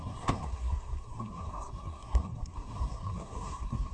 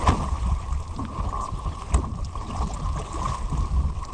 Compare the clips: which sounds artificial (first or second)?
first